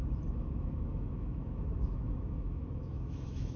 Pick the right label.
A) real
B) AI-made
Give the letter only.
B